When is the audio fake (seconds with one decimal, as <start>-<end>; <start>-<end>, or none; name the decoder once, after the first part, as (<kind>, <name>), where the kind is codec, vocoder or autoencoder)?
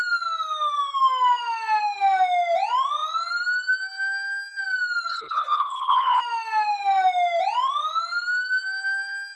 5.1-6.2 (codec, HILCodec)